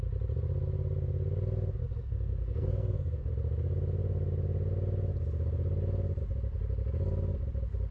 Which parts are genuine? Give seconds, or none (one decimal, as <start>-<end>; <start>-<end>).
0.0-1.8; 3.3-7.9